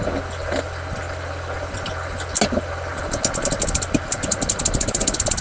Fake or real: real